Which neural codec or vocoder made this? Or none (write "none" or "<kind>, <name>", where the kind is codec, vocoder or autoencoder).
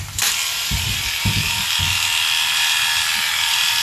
none